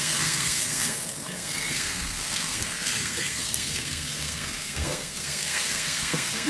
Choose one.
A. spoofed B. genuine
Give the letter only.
A